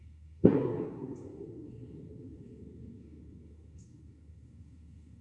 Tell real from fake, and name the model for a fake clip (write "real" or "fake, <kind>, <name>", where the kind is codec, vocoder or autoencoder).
fake, codec, SNAC